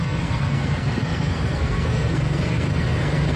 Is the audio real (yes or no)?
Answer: no